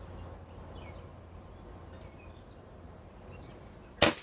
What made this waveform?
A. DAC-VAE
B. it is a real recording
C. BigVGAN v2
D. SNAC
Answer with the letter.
B